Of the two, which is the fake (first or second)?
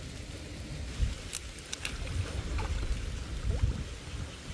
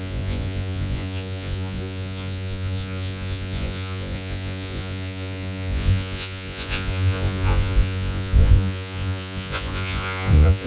second